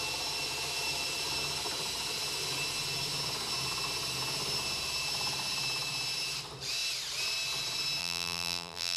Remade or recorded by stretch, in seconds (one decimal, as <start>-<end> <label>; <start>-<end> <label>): 0.0-8.0 recorded; 8.0-9.0 remade